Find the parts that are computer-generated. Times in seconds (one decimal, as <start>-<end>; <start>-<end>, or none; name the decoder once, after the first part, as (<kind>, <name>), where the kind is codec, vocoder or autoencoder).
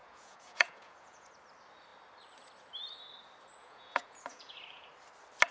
0.0-1.3 (vocoder, Vocos); 3.6-4.9